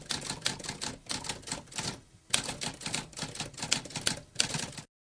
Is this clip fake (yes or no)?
no